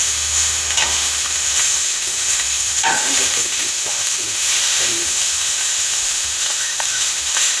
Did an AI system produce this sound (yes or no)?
yes